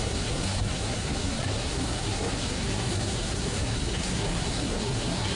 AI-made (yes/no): yes